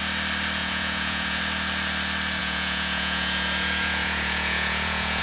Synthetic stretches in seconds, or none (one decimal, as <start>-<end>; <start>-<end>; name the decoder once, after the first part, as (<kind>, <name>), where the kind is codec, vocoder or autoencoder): 0.6-1.4 (vocoder, Vocos); 2.4-5.2